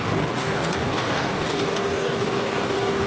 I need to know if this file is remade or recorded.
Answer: remade